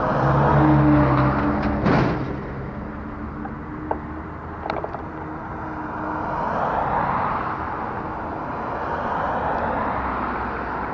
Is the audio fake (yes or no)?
no